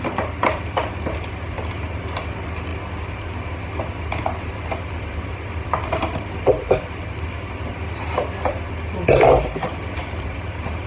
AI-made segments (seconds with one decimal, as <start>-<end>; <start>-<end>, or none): none